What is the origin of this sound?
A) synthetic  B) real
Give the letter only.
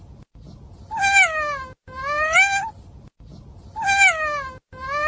B